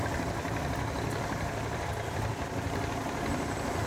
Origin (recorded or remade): recorded